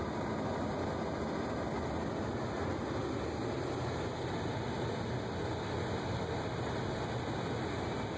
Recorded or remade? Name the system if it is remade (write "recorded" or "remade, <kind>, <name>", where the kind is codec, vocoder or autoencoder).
recorded